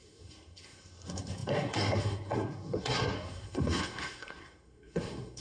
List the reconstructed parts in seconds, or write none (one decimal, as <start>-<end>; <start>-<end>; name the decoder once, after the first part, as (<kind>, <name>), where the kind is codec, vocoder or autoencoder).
0.0-5.4 (codec, SNAC)